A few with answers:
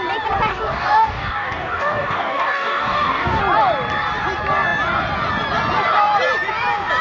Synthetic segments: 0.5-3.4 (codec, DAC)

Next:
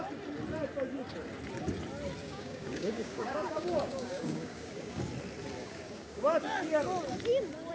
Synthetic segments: 2.2-5.0 (codec, DAC); 5.6-6.4

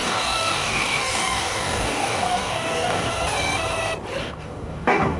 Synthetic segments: 0.0-3.1 (codec, DAC); 4.2-5.2

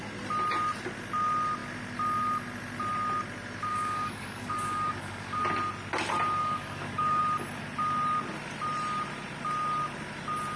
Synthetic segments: 3.7-5.4 (codec, DAC); 6.4-7.2